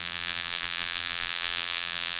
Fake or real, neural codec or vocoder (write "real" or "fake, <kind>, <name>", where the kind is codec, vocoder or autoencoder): fake, vocoder, BigVGAN v2